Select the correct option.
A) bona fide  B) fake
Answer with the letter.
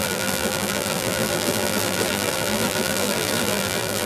B